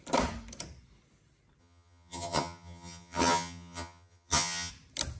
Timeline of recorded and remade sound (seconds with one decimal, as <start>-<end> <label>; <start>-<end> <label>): 0.0-1.6 recorded; 1.6-4.7 remade; 4.7-5.2 recorded